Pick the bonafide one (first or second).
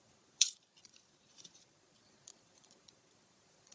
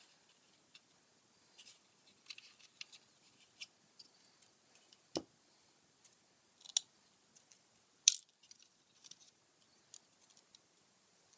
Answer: second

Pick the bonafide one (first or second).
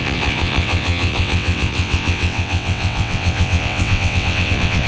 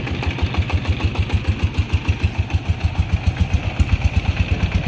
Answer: second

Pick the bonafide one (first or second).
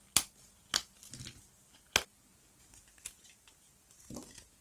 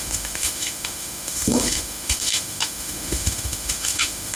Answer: first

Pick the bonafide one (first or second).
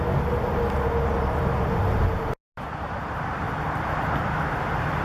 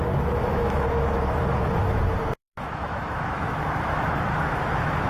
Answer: first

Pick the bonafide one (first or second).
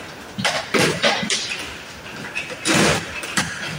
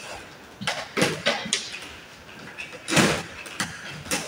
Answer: second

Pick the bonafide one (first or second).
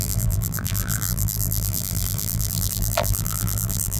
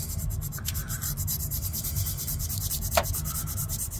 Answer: second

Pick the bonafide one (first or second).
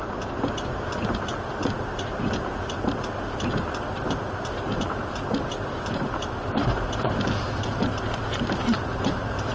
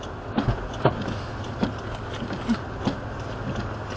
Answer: second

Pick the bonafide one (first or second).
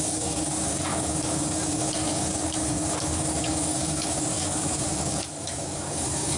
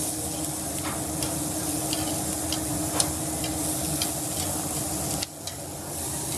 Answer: second